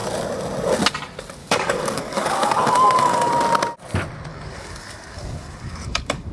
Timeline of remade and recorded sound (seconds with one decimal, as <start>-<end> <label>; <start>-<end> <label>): 0.0-1.4 recorded; 1.4-3.3 remade; 3.3-4.3 recorded; 4.3-6.3 remade